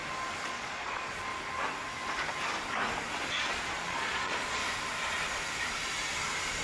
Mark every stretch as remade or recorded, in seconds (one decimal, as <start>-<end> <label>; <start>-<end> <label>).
0.0-0.5 recorded; 0.5-1.3 remade; 1.3-3.3 recorded; 3.3-4.6 remade; 4.6-6.6 recorded